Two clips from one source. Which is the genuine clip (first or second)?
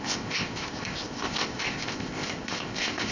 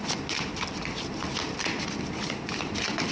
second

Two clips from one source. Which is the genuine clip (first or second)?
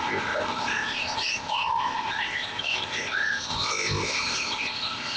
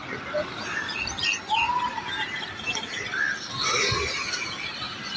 second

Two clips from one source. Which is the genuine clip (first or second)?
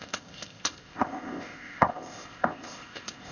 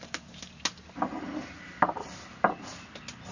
second